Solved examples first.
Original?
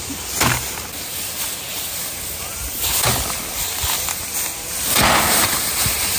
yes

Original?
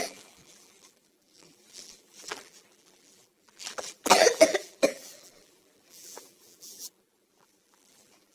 no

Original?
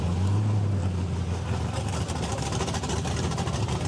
yes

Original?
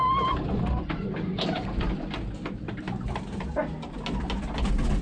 yes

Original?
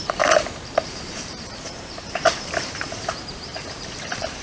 no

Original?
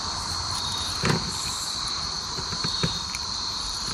no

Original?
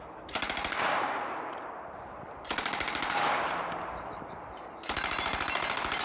no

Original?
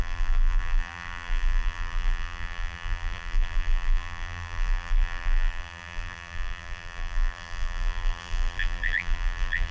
no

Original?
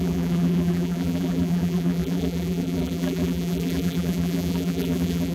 no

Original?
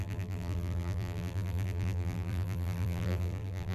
no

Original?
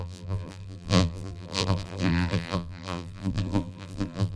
no